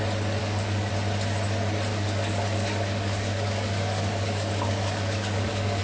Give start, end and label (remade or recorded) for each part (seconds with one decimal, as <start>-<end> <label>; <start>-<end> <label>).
0.0-0.4 recorded; 0.4-0.9 remade; 0.9-1.9 recorded; 1.9-5.8 remade